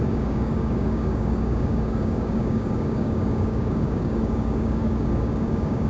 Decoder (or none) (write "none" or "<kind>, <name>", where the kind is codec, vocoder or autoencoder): codec, DAC